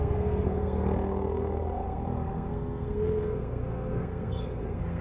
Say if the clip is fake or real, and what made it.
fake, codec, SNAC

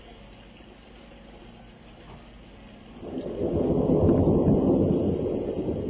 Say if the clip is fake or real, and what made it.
real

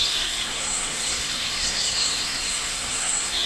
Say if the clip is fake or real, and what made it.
fake, codec, SNAC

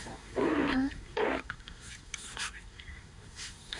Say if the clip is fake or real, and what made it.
fake, codec, SNAC